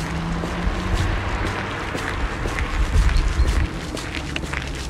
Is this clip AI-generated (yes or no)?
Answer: no